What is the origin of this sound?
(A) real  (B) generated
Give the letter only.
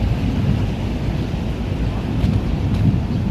A